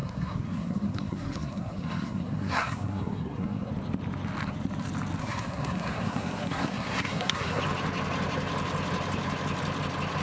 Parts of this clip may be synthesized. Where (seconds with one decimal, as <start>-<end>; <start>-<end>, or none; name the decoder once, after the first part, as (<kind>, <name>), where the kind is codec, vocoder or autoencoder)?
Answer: 0.0-3.7 (codec, SNAC); 5.2-7.6